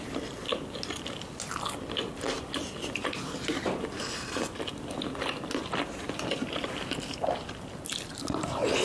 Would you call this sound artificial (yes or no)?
no